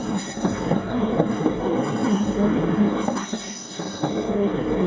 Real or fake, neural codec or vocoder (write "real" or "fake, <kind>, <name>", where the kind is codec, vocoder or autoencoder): fake, codec, SNAC